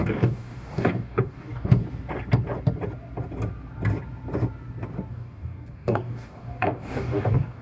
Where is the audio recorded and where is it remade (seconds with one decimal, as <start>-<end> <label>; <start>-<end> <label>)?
0.0-1.8 remade; 1.8-5.1 recorded; 5.1-7.6 remade

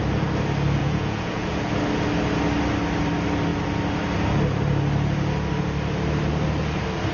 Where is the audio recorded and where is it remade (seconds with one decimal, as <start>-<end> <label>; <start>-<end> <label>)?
0.0-0.8 recorded; 0.8-1.7 remade; 1.7-7.1 recorded

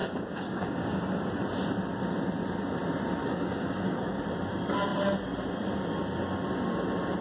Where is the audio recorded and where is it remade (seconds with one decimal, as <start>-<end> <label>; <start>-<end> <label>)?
0.0-1.0 remade; 1.0-3.2 recorded; 3.2-4.2 remade; 4.2-7.2 recorded

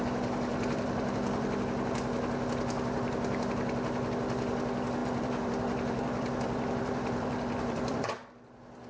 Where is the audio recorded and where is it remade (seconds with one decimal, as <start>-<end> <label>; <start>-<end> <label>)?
0.0-0.5 recorded; 0.5-1.6 remade; 1.6-5.0 recorded; 5.0-8.1 remade; 8.1-8.9 recorded